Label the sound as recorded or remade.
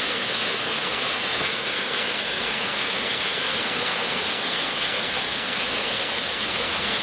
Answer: remade